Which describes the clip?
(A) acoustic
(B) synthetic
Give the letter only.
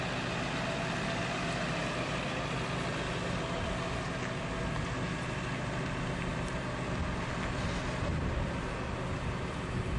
A